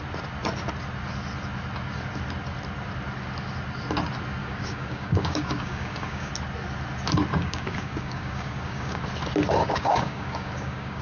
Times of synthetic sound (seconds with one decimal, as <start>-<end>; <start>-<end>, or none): 4.4-6.3; 7.3-9.0; 9.6-11.0